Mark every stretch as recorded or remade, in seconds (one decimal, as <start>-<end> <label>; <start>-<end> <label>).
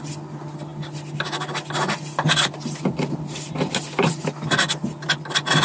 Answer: 0.0-5.6 recorded